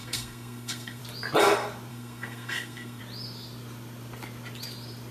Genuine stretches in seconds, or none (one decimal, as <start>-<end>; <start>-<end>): 1.0-1.9; 3.0-5.1